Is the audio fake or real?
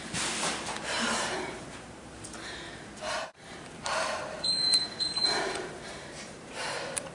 fake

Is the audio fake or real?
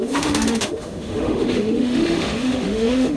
fake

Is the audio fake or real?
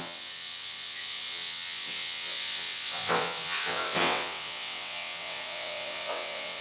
fake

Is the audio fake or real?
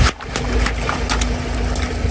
real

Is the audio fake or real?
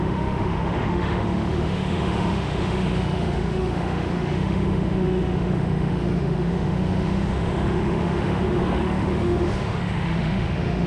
fake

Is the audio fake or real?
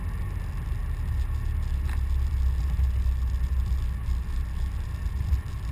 real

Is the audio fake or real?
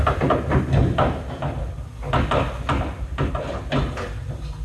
real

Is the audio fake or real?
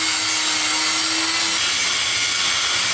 real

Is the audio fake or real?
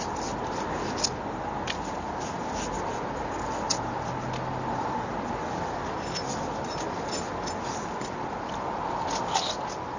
real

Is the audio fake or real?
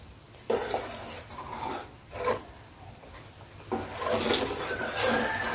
real